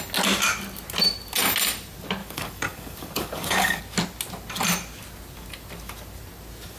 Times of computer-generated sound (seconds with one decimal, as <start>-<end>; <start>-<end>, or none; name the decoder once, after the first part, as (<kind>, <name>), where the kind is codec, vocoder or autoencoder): 2.2-3.8 (codec, DAC)